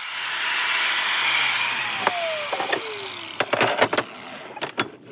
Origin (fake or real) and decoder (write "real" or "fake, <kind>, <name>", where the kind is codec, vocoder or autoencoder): real